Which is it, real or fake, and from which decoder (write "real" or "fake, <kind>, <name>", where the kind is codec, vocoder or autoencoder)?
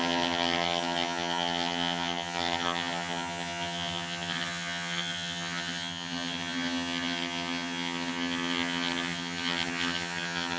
fake, vocoder, HiFi-GAN